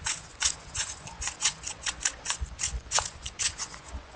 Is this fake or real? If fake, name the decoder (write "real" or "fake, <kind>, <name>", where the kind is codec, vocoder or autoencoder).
fake, vocoder, Vocos